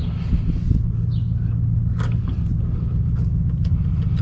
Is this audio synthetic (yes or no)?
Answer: no